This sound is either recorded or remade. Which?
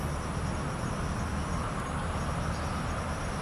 recorded